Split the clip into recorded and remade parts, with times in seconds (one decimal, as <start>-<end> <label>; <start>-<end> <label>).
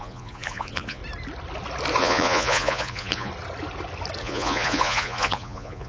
0.0-1.0 remade; 1.0-2.0 recorded; 2.0-3.3 remade; 3.3-4.2 recorded; 4.2-5.9 remade